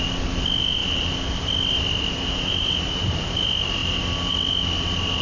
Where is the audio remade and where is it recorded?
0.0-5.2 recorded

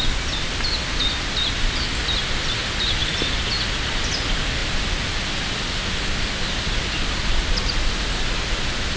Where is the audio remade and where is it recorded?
0.0-9.0 recorded

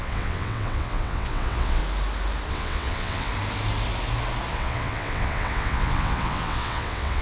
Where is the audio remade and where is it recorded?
0.0-1.8 remade; 1.8-2.5 recorded; 2.5-3.3 remade; 3.3-4.5 recorded; 4.5-7.2 remade

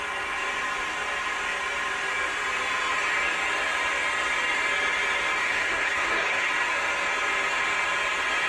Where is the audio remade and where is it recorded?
0.0-5.4 recorded; 5.4-6.5 remade; 6.5-8.5 recorded

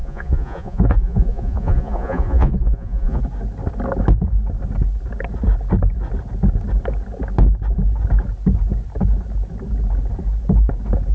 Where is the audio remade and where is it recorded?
0.0-3.2 remade; 3.2-11.1 recorded

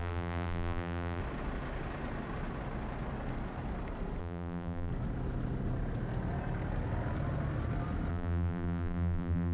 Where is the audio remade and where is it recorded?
0.0-1.2 remade; 1.2-4.2 recorded; 4.2-4.9 remade; 4.9-8.1 recorded; 8.1-9.5 remade

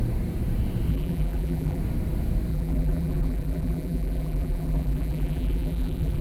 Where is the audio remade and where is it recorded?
0.0-0.9 recorded; 0.9-1.8 remade; 1.8-2.5 recorded; 2.5-6.2 remade